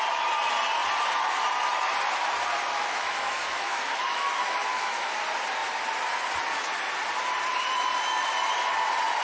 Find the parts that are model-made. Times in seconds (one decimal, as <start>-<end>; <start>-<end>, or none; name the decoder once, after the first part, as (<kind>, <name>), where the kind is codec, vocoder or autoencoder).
2.7-5.1 (autoencoder, DAC-VAE)